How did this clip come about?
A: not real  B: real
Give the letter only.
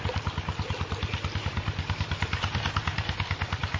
B